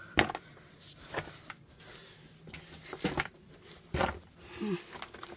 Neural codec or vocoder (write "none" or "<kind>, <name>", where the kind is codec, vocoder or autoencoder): none